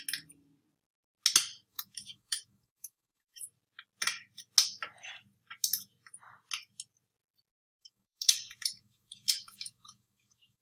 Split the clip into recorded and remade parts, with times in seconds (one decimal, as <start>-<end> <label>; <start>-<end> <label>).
0.0-1.7 recorded; 1.7-3.4 remade; 3.4-7.5 recorded; 7.5-10.6 remade